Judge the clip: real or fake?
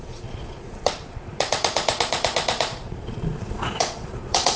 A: fake